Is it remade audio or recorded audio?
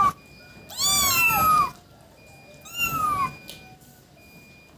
recorded